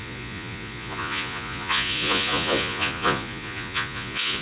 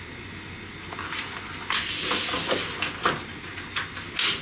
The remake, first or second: first